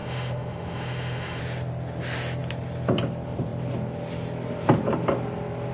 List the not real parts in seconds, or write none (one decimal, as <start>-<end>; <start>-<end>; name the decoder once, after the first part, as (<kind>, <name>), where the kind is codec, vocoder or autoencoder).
0.0-1.4 (autoencoder, DAC-VAE)